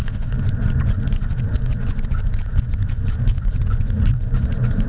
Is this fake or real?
fake